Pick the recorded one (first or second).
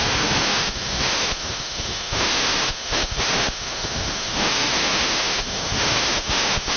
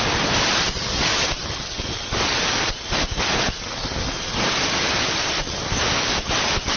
second